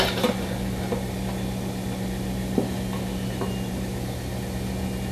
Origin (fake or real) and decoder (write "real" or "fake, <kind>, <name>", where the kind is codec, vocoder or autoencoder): real